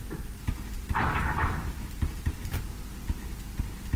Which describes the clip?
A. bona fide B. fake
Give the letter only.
A